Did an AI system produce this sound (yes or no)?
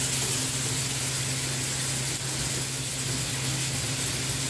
no